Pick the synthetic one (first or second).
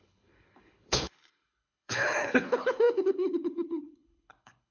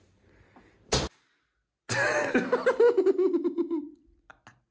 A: first